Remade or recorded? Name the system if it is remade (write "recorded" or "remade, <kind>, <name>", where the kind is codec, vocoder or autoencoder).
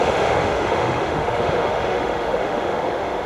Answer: remade, autoencoder, DAC-VAE